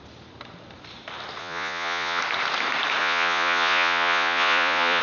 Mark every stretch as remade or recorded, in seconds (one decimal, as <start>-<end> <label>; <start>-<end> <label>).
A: 0.0-1.4 recorded; 1.4-2.2 remade; 2.2-3.0 recorded; 3.0-5.0 remade